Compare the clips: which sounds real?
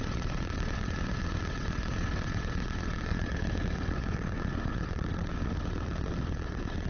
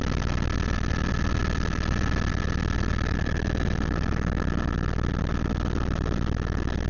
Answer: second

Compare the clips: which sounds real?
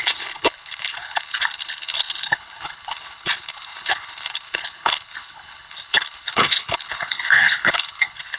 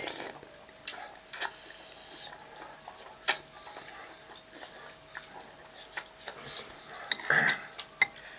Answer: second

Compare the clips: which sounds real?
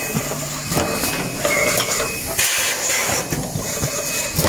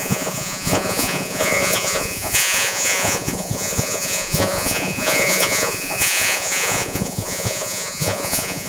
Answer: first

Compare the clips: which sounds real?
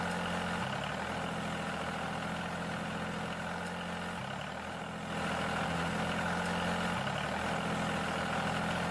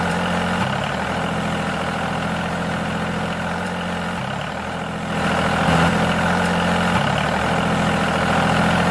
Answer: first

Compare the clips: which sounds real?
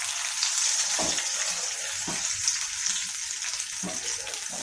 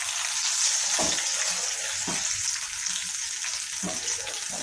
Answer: second